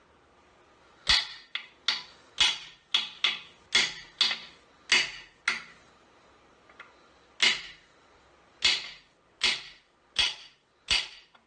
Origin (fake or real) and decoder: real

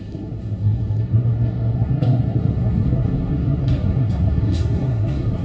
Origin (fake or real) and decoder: fake, codec, SNAC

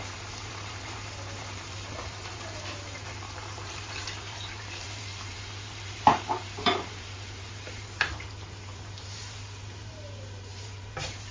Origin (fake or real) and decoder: fake, vocoder, BigVGAN v2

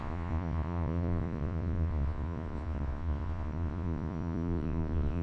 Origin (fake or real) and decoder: fake, vocoder, Vocos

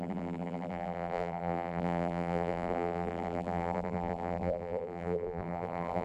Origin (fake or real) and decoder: fake, vocoder, BigVGAN v2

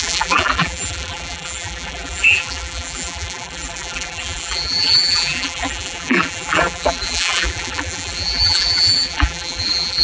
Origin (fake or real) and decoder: fake, vocoder, BigVGAN v2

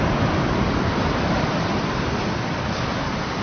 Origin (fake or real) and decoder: fake, vocoder, BigVGAN v2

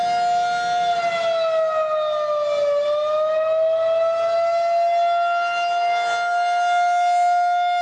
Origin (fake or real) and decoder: real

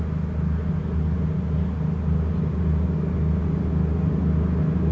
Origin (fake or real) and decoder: real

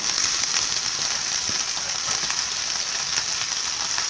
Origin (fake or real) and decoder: real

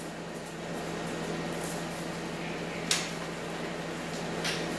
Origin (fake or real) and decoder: real